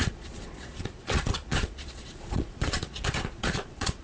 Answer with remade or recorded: remade